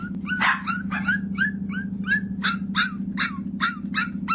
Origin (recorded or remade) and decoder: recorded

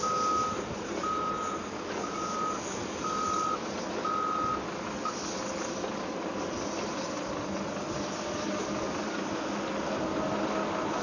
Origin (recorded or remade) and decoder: recorded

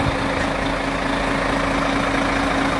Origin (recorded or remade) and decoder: recorded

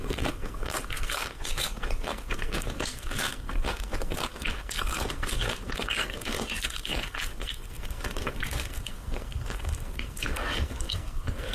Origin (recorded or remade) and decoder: remade, codec, SNAC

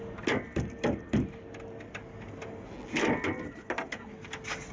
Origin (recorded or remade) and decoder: recorded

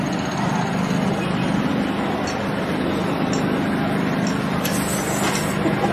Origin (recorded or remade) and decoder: recorded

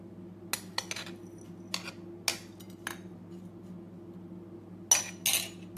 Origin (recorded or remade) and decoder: recorded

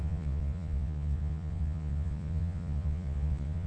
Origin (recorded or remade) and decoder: remade, vocoder, Vocos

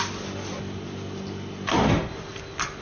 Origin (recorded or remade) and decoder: recorded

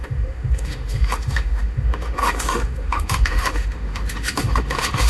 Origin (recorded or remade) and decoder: remade, autoencoder, DAC-VAE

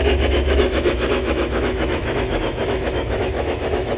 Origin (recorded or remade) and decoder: remade, autoencoder, DAC-VAE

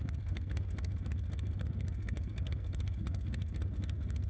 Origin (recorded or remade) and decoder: remade, codec, SNAC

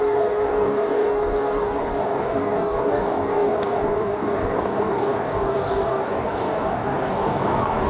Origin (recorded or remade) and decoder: remade, codec, DAC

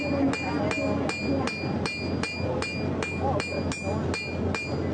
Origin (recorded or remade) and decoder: recorded